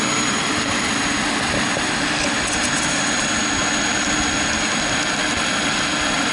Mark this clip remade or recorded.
recorded